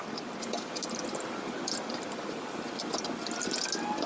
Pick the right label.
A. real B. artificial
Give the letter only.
A